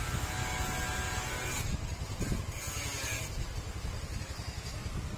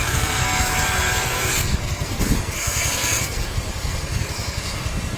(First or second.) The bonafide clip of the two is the first